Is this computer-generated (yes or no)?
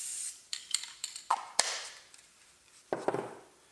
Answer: yes